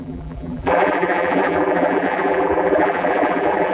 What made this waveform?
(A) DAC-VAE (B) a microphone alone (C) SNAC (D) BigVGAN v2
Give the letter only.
D